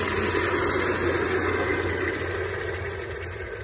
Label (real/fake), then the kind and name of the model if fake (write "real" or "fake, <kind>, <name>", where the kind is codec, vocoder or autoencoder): real